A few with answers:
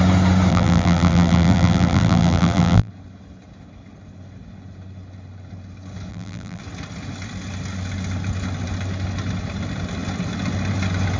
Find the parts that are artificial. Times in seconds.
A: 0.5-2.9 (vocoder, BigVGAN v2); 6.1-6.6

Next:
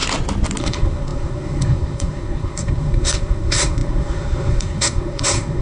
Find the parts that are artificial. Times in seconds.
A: 0.6-5.6 (codec, SNAC)

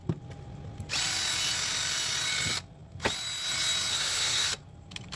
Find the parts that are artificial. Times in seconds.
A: 3.9-4.5 (codec, SNAC)